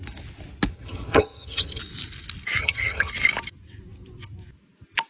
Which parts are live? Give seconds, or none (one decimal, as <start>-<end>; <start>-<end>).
0.0-0.7; 1.8-2.6; 3.1-5.1